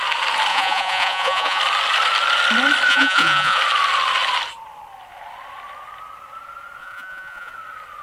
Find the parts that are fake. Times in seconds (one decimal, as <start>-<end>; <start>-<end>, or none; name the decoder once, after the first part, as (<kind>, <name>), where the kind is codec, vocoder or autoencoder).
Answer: 0.5-1.6 (vocoder, Vocos); 2.9-3.6; 6.8-7.5